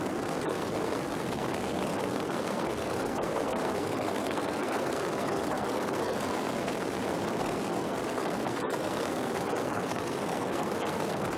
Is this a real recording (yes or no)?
no